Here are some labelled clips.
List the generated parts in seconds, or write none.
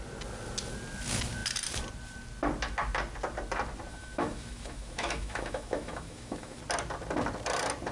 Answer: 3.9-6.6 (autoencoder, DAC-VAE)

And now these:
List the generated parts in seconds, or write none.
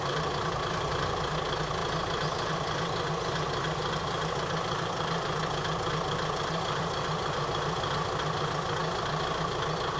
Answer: none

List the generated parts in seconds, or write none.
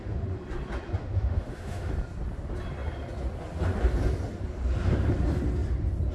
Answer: 1.0-1.9 (autoencoder, DAC-VAE)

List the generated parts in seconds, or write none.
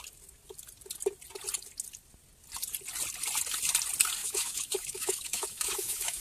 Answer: 4.2-6.2 (autoencoder, DAC-VAE)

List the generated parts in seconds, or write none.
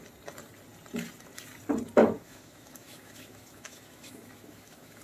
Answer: 2.0-5.0 (autoencoder, DAC-VAE)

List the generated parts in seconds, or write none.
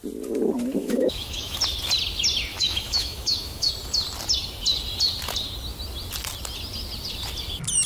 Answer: 0.8-1.6 (autoencoder, DAC-VAE); 2.5-3.7